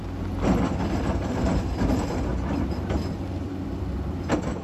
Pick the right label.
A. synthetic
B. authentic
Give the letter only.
A